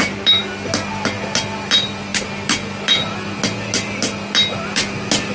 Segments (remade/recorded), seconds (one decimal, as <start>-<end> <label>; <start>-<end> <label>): 0.0-5.3 recorded